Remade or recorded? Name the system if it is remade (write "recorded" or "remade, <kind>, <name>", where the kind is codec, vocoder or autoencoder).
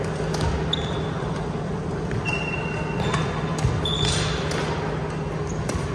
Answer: recorded